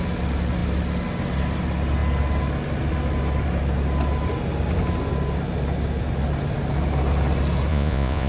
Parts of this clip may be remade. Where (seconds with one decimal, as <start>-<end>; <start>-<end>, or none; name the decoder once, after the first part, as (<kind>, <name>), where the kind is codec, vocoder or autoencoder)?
7.7-8.3 (vocoder, Vocos)